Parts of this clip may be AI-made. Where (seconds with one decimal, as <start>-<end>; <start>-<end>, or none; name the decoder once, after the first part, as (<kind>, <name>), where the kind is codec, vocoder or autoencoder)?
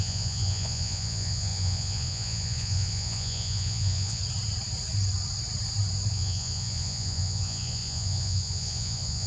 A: 0.0-4.2 (vocoder, Vocos); 6.1-9.3